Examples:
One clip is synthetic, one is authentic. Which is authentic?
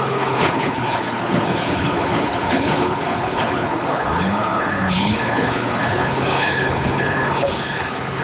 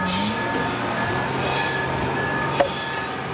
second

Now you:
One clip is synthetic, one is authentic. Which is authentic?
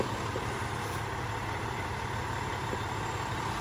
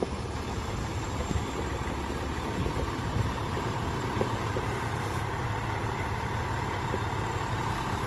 first